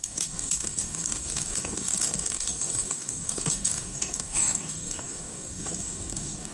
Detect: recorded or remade remade